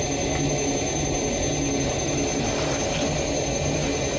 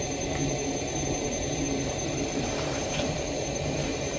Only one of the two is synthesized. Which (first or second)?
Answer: second